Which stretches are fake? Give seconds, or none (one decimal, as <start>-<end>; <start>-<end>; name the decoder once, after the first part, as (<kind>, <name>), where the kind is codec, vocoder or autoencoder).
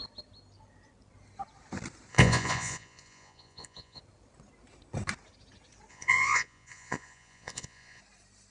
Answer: 2.1-4.0 (vocoder, Vocos); 5.9-8.0